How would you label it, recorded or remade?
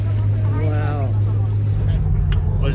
recorded